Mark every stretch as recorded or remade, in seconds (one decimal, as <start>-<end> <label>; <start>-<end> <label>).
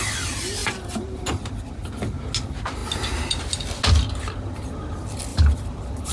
0.0-0.6 recorded; 0.6-1.2 remade; 1.2-5.3 recorded; 5.3-6.1 remade